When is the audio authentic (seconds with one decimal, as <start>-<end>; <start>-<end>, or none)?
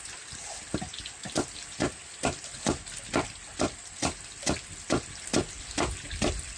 0.0-6.6